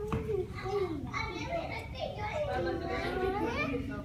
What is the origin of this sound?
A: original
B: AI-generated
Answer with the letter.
A